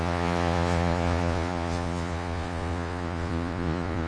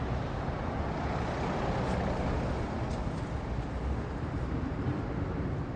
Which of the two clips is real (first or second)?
second